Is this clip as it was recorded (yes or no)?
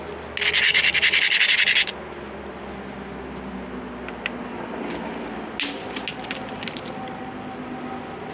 yes